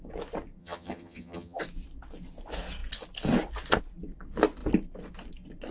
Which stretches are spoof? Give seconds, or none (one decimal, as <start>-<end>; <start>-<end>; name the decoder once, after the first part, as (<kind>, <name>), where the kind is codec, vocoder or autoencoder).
0.6-1.6 (vocoder, HiFi-GAN)